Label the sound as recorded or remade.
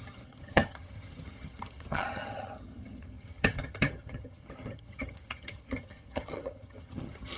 remade